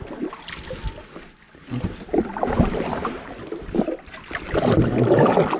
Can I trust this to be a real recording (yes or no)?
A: yes